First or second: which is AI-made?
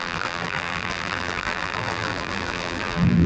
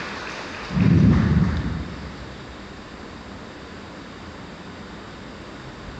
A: first